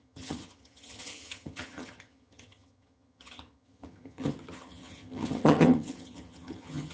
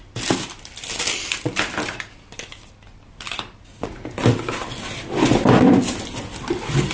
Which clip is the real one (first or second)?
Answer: second